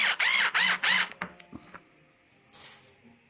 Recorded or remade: recorded